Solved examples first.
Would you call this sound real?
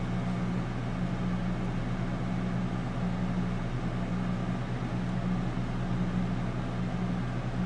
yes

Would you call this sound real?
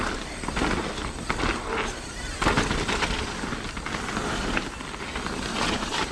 yes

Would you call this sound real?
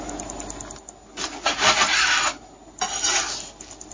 yes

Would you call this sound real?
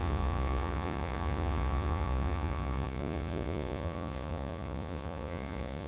no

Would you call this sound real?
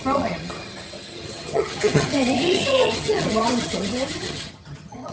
no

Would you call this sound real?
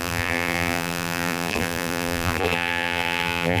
no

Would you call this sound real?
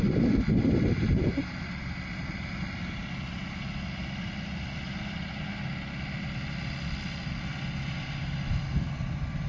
yes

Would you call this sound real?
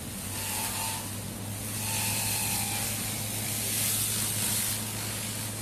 yes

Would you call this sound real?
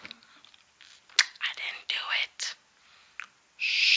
yes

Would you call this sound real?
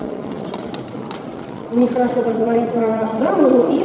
no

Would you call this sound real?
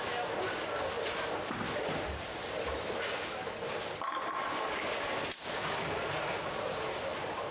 yes